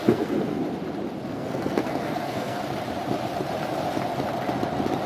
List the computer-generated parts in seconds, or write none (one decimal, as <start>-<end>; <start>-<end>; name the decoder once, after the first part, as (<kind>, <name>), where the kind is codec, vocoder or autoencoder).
0.0-0.6 (codec, SNAC); 1.3-2.6

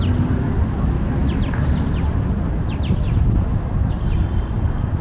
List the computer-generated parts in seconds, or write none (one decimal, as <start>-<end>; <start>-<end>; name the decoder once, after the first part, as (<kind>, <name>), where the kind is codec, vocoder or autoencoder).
none

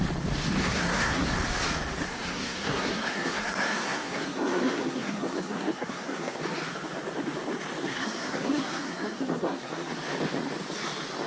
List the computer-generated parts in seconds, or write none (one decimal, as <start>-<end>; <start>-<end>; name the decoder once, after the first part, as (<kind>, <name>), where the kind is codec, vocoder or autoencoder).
0.6-1.3 (codec, SNAC); 2.1-6.4; 7.9-9.9

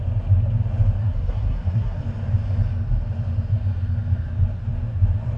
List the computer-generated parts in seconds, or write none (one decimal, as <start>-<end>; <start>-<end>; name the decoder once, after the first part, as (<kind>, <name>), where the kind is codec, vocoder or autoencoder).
1.0-2.0 (codec, SNAC)

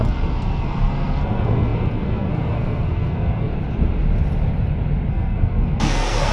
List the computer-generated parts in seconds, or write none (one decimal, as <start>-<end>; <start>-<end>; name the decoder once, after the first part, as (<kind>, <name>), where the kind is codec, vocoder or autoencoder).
0.0-3.5 (codec, SNAC); 5.1-6.3

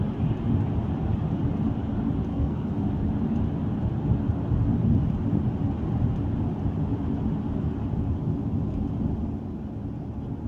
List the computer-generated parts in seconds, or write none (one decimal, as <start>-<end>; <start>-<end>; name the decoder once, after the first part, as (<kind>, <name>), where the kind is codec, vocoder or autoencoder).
2.3-2.9 (codec, SNAC)

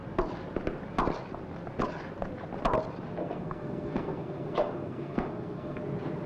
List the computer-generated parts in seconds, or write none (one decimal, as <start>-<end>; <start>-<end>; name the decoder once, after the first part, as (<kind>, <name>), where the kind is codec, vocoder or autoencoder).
3.2-5.8 (codec, SNAC)